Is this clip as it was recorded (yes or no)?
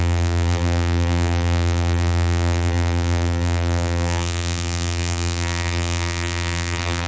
no